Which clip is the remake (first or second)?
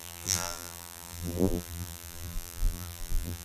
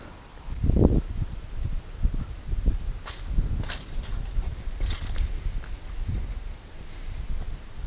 first